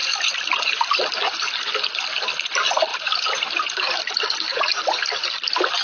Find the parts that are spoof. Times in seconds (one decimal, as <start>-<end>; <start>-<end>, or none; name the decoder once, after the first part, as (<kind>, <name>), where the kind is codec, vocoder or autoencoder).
0.0-1.0 (vocoder, BigVGAN v2); 2.9-4.0; 4.5-5.0